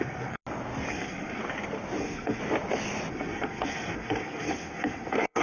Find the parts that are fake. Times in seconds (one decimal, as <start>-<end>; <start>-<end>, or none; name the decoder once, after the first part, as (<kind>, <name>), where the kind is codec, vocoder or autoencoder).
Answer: 0.0-0.4 (codec, SNAC); 0.9-1.4; 2.0-2.4; 3.1-5.4